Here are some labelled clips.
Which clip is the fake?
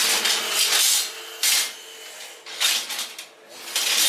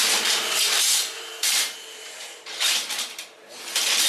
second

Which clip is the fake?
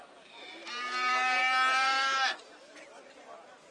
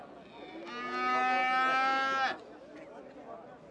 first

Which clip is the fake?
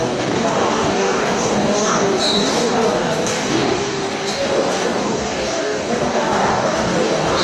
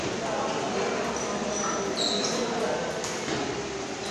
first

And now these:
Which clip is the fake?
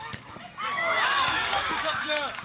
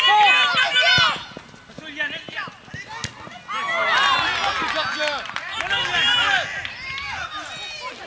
first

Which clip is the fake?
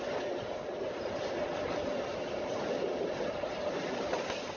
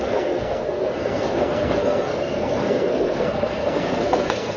second